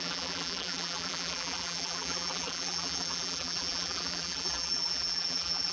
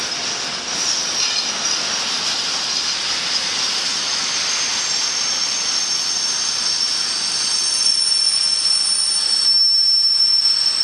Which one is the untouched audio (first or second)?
second